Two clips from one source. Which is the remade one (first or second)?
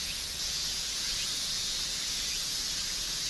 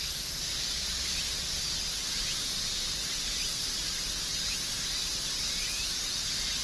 first